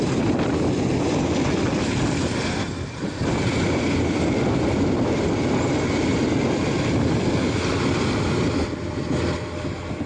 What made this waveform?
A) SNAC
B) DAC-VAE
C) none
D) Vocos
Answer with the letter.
C